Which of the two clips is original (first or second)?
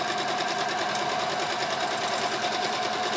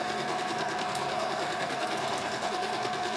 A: first